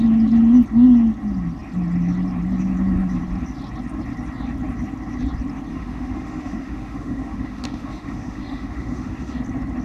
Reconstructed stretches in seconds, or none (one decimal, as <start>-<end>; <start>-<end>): 5.7-9.4